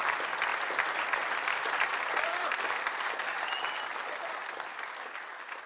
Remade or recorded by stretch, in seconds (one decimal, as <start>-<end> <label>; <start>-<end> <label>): 0.0-0.5 recorded; 0.5-3.9 remade; 3.9-5.7 recorded